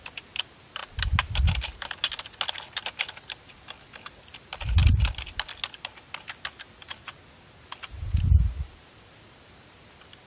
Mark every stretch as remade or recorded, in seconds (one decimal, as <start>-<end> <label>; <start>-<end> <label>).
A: 0.0-10.3 recorded